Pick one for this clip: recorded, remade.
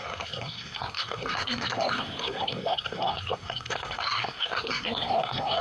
remade